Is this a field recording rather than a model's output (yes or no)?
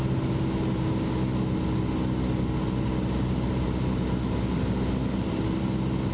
yes